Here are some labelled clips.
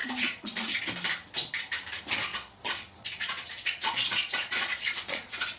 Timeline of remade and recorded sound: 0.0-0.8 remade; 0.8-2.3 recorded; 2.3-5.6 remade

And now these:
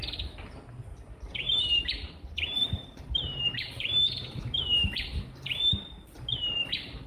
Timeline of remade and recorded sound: 0.0-1.3 recorded; 1.3-5.6 remade; 5.6-7.1 recorded

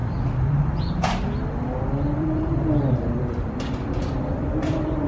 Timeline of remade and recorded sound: 0.0-5.1 remade

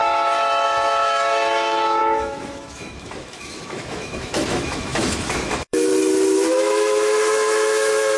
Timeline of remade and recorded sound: 0.0-5.9 remade; 5.9-6.5 recorded; 6.5-8.2 remade

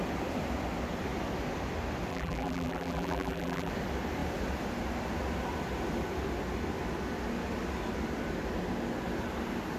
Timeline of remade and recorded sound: 0.0-2.1 recorded; 2.1-3.7 remade; 3.7-9.8 recorded

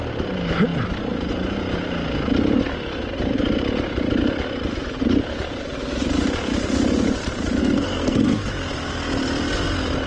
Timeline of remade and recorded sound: 0.0-7.6 recorded; 7.6-8.5 remade; 8.5-10.1 recorded

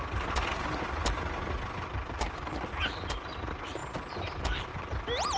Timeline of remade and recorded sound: 0.0-5.4 recorded

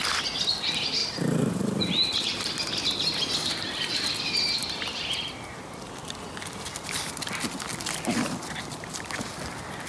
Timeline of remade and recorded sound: 0.0-1.0 recorded; 1.0-2.5 remade; 2.5-9.9 recorded